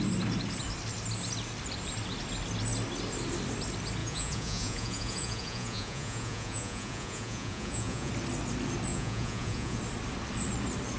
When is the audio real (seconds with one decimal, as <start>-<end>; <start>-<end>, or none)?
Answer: 0.0-4.0; 8.1-8.9; 9.8-11.0